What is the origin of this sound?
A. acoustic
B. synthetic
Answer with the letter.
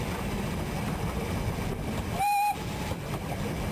B